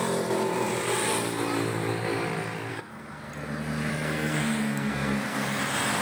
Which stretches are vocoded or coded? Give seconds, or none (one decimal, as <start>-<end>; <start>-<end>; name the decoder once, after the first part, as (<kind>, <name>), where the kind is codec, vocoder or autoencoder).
2.7-3.3 (codec, SNAC); 3.9-5.6